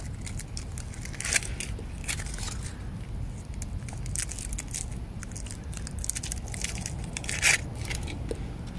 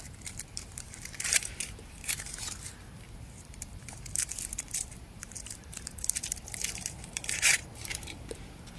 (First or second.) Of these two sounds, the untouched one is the first